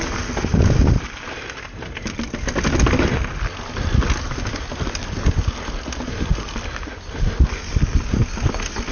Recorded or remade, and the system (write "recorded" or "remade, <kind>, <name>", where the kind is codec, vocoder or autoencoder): recorded